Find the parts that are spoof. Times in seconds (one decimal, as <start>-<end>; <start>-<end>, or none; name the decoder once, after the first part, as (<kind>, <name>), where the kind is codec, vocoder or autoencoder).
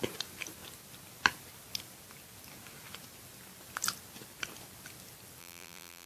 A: 5.4-6.1 (vocoder, BigVGAN v2)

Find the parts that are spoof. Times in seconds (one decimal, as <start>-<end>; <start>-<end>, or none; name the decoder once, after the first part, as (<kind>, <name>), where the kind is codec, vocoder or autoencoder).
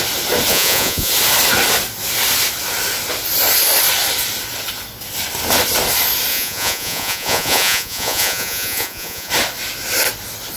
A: 0.5-1.1 (vocoder, Vocos); 6.3-9.3